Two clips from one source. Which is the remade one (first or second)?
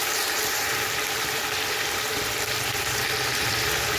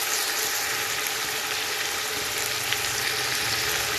first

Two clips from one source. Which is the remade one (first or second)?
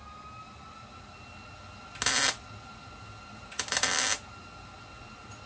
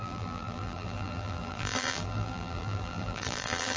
second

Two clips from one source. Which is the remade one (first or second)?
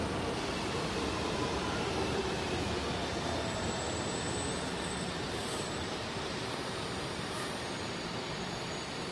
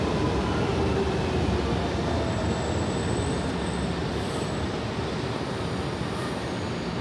first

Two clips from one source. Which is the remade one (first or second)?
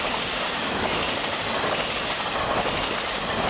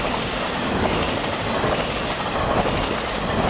first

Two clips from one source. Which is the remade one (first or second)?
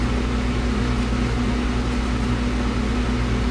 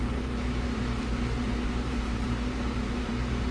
second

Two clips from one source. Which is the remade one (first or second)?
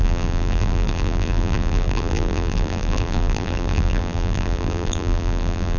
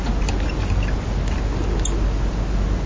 first